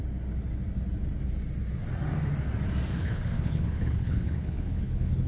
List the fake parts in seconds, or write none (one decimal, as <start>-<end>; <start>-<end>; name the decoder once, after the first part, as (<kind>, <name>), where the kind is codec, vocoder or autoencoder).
3.0-5.3 (codec, HILCodec)

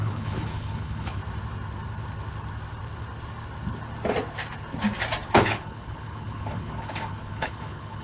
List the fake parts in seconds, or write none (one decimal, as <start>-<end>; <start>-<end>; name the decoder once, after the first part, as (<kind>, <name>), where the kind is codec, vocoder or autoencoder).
0.0-1.2 (codec, HILCodec); 5.3-8.0

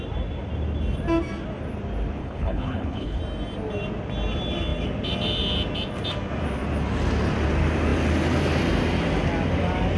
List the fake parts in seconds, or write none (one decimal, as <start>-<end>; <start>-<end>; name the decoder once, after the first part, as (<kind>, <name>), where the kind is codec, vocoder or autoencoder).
2.2-3.2 (codec, HILCodec)

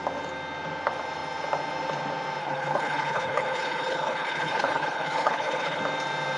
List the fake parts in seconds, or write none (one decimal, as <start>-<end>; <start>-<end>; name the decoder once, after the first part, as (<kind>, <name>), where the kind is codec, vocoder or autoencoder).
2.4-5.8 (codec, HILCodec)

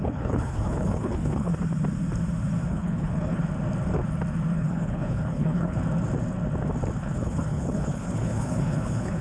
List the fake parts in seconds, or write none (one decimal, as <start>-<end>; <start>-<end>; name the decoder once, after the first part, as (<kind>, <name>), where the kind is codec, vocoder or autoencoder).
0.0-1.5 (codec, HILCodec); 2.7-3.4; 4.5-5.8; 7.0-9.2